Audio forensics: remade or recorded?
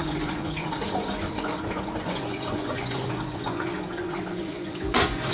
remade